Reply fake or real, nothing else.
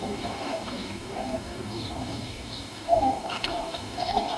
fake